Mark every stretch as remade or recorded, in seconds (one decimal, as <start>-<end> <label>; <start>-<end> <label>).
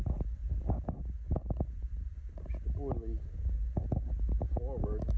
0.0-0.4 recorded; 0.4-3.5 remade; 3.5-5.2 recorded